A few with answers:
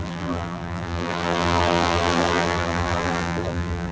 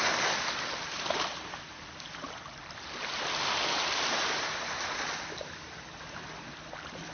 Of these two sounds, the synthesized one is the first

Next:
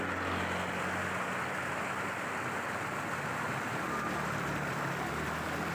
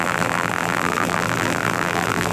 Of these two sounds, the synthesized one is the second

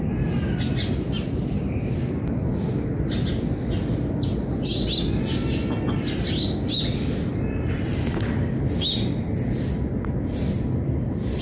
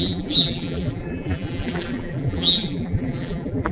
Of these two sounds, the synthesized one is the second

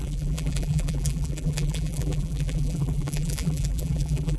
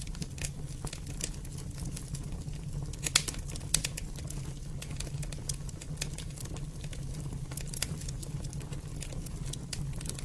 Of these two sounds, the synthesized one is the first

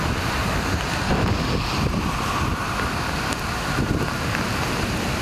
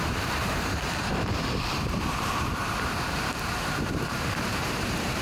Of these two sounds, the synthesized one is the second